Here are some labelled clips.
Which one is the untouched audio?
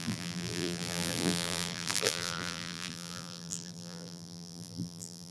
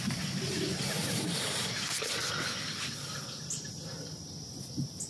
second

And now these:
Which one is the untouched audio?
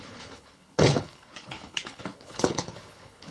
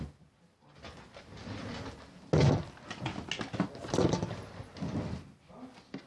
second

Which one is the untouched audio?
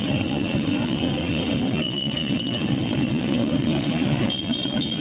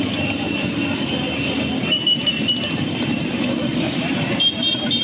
second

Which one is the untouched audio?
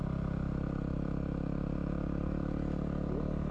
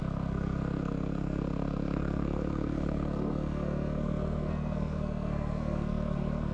first